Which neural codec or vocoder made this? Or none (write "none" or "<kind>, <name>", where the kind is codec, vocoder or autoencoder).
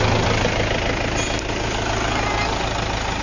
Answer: none